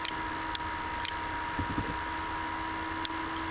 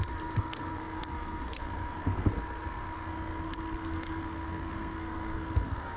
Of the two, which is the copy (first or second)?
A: second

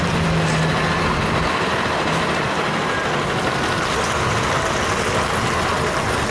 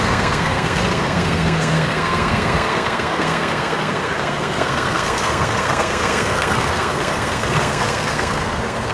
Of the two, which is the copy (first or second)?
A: second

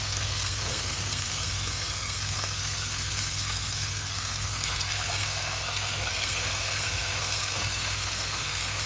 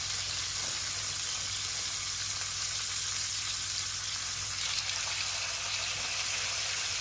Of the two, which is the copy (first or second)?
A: first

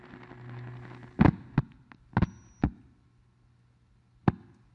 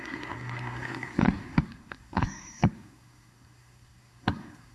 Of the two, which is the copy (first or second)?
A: second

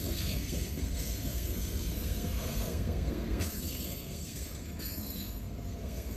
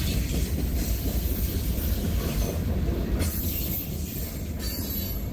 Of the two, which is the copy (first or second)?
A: first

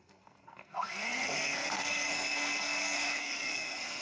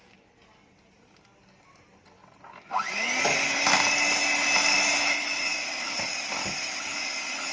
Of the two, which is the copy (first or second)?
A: first